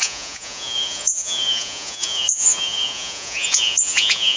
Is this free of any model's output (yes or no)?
no